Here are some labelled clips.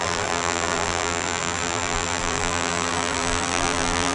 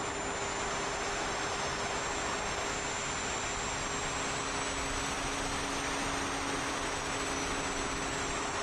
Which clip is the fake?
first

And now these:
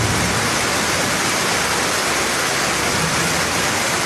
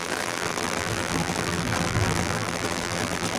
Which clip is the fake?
second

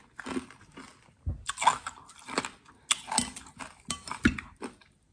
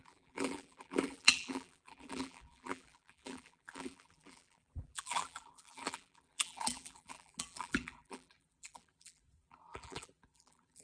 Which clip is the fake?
second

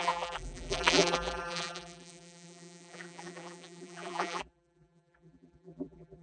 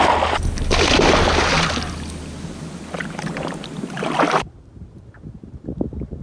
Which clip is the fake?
first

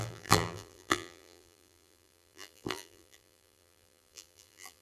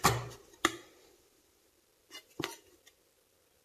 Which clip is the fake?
first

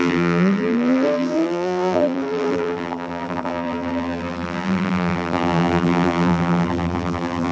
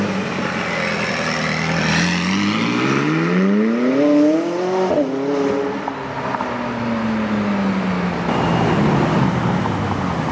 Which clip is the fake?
first